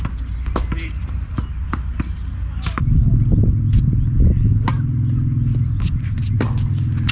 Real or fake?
real